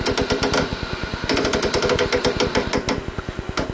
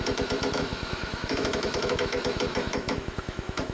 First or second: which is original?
first